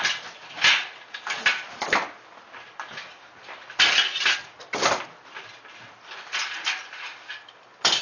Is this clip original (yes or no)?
yes